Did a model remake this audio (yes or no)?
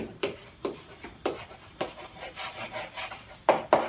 no